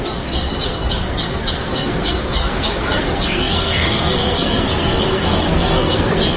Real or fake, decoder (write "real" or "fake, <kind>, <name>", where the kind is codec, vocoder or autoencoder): fake, codec, SNAC